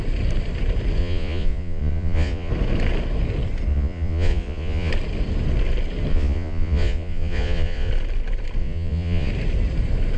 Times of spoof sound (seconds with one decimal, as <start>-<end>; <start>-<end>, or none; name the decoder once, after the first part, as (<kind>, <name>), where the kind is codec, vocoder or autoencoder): 1.0-2.5 (vocoder, Vocos); 3.7-4.9; 6.1-7.9; 8.6-9.3